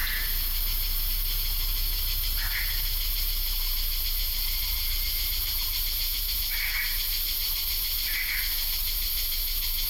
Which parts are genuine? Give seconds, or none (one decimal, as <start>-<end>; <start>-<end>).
none